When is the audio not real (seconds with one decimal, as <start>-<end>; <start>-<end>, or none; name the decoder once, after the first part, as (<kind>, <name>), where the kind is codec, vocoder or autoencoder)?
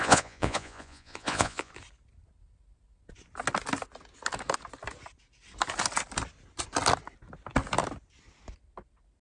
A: 0.0-1.7 (vocoder, Vocos)